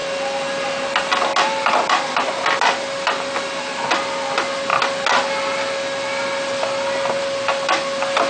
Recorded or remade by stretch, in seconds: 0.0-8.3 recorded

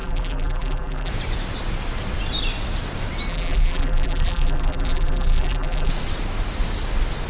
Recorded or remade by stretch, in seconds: 0.0-1.1 remade; 1.1-3.3 recorded; 3.3-5.9 remade; 5.9-7.3 recorded